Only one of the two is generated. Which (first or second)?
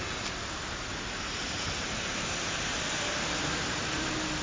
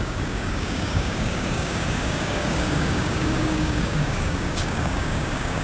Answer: second